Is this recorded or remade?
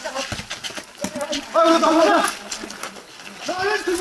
recorded